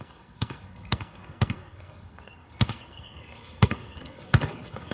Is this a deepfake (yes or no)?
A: yes